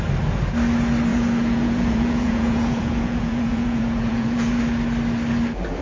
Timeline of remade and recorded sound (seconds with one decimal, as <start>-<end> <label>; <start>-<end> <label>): 0.0-1.1 recorded; 1.1-4.6 remade; 4.6-5.8 recorded